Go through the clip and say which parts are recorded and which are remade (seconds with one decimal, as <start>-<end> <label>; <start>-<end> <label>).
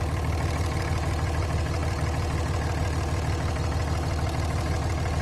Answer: 0.0-5.2 recorded